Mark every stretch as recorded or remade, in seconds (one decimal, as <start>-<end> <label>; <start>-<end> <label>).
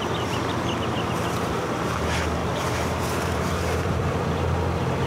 0.0-2.4 recorded; 2.4-4.2 remade; 4.2-5.1 recorded